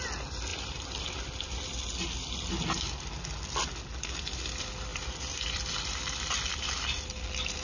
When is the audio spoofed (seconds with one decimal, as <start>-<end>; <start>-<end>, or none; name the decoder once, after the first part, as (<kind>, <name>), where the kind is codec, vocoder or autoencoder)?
0.5-1.8 (vocoder, BigVGAN v2); 4.9-5.7